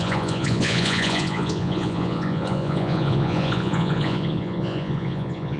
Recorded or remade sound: remade